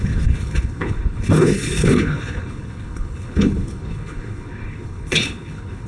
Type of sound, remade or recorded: remade